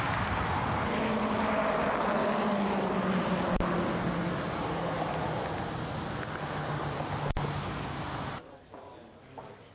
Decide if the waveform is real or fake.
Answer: real